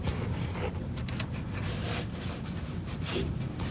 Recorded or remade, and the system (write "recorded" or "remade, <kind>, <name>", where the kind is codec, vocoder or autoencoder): recorded